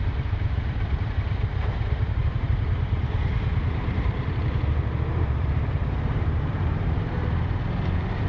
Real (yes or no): no